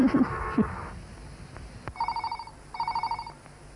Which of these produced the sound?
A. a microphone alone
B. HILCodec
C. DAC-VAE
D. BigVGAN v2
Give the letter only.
A